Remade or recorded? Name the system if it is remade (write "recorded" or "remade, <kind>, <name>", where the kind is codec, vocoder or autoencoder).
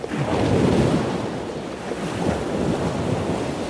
recorded